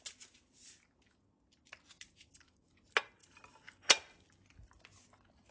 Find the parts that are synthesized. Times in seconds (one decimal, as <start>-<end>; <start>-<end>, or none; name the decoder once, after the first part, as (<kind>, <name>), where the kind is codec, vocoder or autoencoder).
none